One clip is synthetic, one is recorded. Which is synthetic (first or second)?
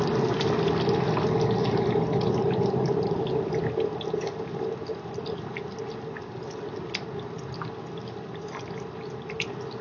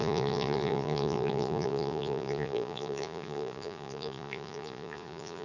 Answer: second